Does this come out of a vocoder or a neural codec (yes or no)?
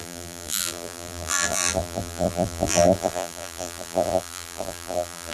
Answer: yes